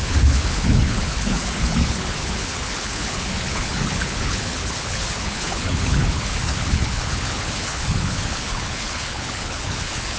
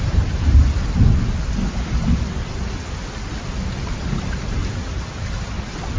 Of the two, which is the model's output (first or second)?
first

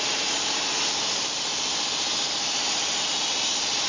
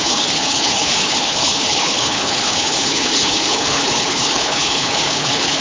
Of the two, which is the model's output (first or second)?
second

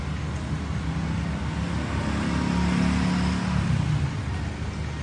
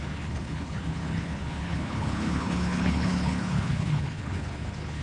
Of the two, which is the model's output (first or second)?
second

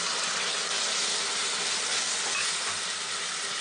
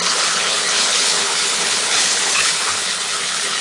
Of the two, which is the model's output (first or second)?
second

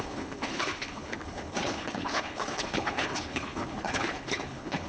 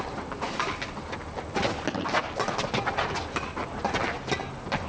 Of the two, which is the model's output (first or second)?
first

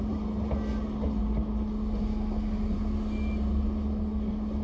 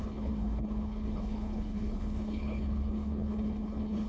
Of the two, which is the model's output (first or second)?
second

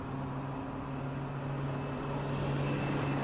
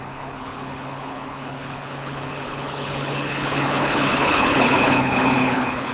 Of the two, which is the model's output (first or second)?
second